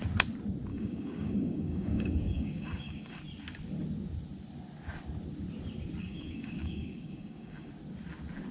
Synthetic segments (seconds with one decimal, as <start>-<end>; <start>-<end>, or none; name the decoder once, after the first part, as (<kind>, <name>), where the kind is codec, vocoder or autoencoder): 0.7-3.2 (codec, DAC); 6.0-7.7